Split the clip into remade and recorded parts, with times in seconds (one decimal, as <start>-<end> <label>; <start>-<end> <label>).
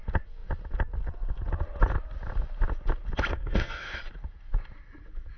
0.0-3.3 recorded; 3.3-4.0 remade; 4.0-5.4 recorded